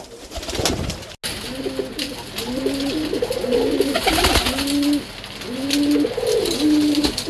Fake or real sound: real